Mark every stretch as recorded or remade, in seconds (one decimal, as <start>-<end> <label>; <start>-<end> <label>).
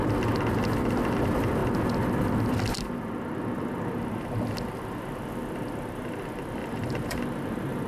0.0-6.6 recorded; 6.6-7.2 remade; 7.2-7.9 recorded